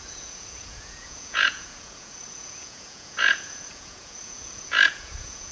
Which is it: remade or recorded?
remade